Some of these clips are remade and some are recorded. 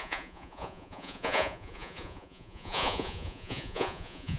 remade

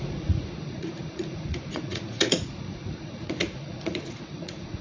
remade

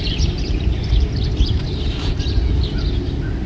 recorded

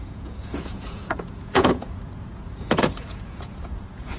remade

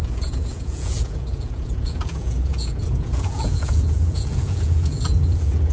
remade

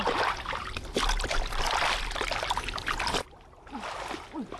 recorded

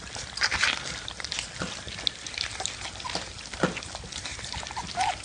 recorded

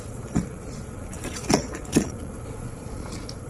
remade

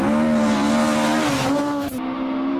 recorded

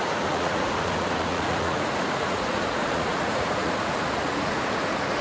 remade